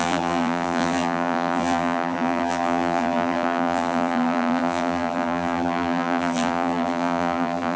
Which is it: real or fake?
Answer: fake